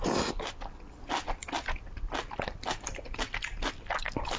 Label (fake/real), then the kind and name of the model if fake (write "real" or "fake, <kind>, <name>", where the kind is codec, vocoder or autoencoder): real